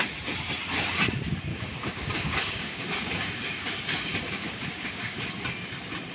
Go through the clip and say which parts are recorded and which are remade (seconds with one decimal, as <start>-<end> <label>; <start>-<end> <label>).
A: 0.0-1.5 recorded; 1.5-5.2 remade; 5.2-6.1 recorded